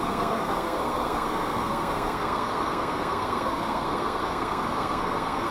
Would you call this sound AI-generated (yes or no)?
yes